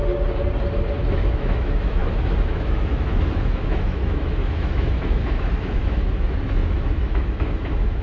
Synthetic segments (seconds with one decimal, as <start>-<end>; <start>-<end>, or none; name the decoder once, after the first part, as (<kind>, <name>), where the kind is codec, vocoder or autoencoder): 1.0-8.0 (autoencoder, DAC-VAE)